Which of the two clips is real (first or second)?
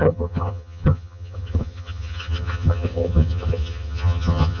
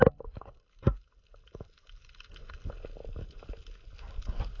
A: second